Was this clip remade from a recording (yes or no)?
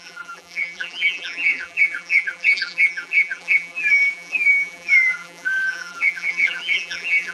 yes